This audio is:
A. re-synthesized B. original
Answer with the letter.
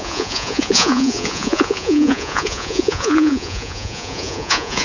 A